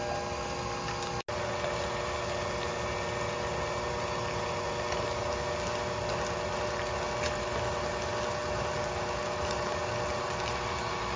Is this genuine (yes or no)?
yes